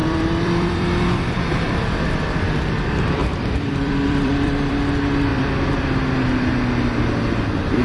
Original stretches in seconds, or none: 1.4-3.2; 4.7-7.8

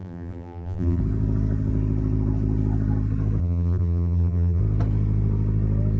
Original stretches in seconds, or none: 1.0-3.4; 4.6-6.0

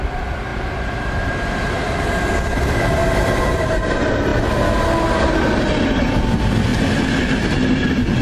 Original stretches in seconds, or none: 0.0-0.5; 2.3-3.0; 3.9-8.2

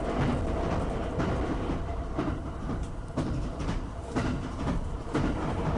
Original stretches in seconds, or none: 0.0-1.9

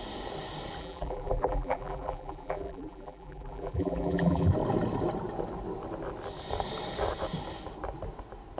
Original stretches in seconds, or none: 0.0-0.8; 4.5-8.6

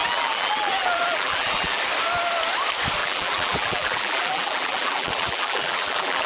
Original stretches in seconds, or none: 1.8-3.0

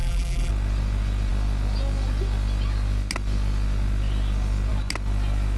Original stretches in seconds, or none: 0.5-5.6

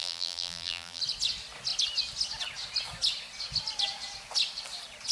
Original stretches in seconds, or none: 1.0-5.1